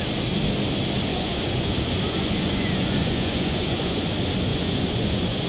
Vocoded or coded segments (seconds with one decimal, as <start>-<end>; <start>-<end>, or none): 1.1-4.1; 4.5-5.5

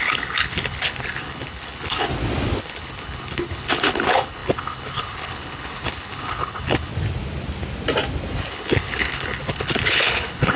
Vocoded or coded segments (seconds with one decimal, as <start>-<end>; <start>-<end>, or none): 0.0-2.1; 2.6-6.9; 8.5-10.6

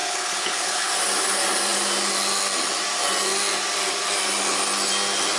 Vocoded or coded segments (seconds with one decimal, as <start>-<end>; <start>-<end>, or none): 0.0-0.9

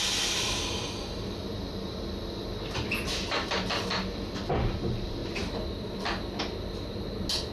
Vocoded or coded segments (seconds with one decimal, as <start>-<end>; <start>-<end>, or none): none

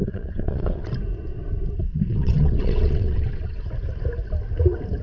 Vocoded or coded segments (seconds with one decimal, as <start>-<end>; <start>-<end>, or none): 0.0-0.9; 1.9-3.6

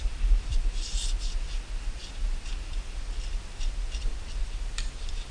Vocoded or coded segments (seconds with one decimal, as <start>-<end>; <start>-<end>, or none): none